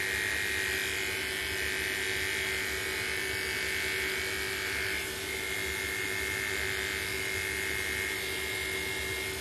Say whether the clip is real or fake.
real